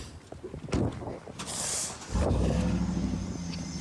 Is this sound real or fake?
real